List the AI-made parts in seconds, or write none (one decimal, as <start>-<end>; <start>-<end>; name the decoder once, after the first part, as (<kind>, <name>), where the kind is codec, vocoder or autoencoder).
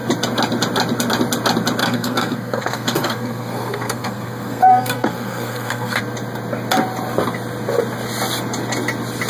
1.8-6.0 (codec, SNAC)